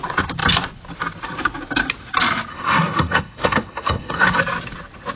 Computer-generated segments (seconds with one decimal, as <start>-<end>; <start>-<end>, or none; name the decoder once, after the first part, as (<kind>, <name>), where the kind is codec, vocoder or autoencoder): 2.5-4.4 (codec, SNAC)